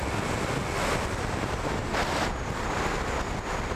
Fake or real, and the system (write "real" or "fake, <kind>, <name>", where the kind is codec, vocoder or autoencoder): real